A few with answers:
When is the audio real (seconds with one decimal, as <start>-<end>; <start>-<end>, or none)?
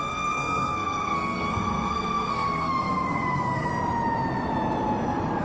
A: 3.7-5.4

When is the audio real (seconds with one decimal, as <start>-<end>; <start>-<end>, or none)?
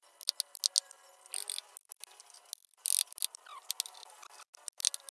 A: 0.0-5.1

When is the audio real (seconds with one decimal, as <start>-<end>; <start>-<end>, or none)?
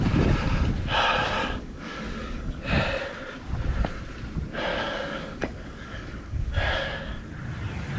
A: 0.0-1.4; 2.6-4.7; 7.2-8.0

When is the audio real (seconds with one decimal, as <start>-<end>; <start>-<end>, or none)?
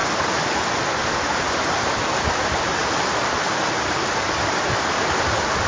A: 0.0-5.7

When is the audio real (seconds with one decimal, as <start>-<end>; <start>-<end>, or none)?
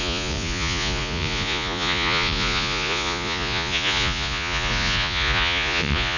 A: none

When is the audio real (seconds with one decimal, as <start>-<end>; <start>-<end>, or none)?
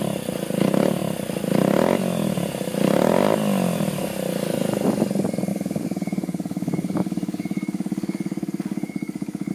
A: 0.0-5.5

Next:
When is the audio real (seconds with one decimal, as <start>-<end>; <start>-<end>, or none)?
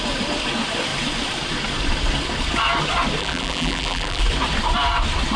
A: 0.0-3.2; 4.2-5.4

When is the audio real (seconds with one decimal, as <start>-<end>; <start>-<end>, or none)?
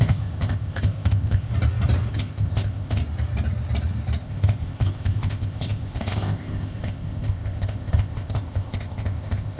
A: 1.5-2.1; 3.0-4.2